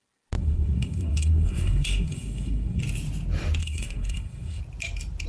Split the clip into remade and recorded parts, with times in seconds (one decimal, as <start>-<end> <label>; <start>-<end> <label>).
0.0-0.4 recorded; 0.4-2.8 remade; 2.8-3.6 recorded; 3.6-4.6 remade; 4.6-5.3 recorded